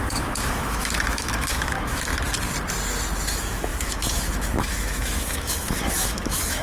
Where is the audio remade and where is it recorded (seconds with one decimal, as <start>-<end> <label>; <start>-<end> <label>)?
0.0-2.1 remade; 2.1-3.3 recorded; 3.3-6.6 remade